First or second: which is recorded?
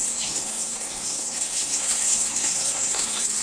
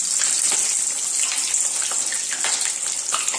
second